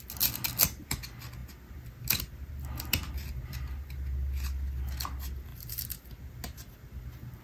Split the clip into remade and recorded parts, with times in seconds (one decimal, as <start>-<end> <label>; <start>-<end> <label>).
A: 0.0-5.5 recorded; 5.5-6.1 remade; 6.1-7.4 recorded